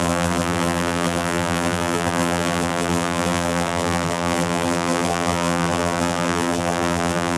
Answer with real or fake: fake